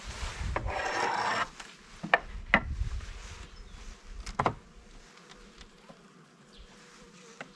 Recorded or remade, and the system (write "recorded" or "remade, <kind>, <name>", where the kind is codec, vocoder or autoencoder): recorded